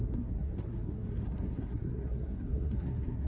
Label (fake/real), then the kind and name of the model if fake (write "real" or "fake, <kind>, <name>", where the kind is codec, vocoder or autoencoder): fake, codec, SNAC